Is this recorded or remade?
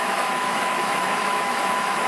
remade